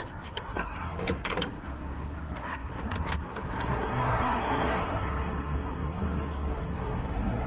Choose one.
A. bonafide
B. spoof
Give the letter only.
B